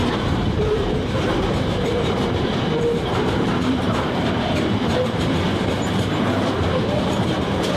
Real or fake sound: fake